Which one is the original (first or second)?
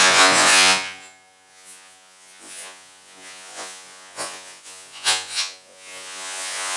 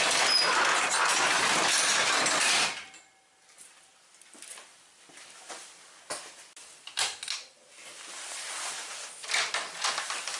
second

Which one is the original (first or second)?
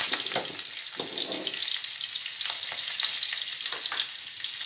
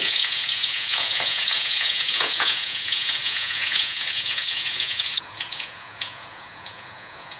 first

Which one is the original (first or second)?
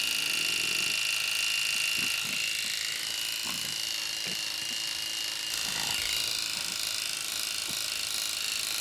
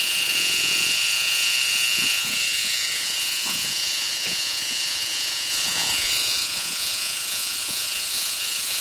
first